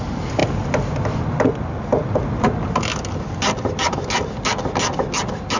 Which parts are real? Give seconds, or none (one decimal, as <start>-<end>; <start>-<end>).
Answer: 0.0-5.6